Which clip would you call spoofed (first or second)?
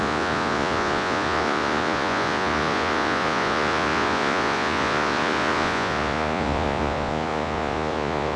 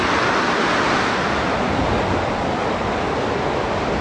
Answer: first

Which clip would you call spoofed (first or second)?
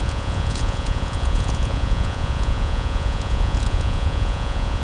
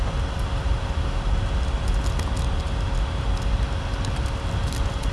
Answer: first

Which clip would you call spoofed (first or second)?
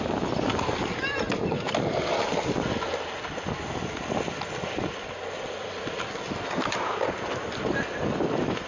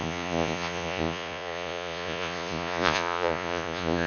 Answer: second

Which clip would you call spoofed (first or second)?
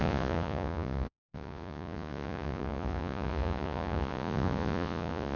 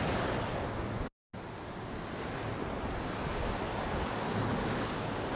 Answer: first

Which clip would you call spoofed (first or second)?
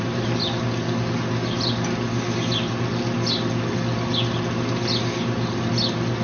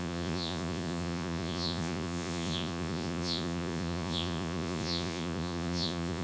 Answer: second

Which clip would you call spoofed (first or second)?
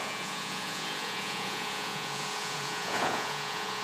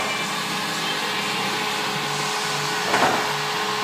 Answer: first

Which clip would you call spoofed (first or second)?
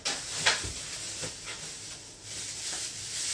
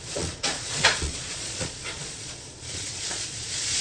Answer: second